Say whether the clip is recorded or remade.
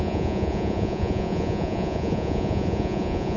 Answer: remade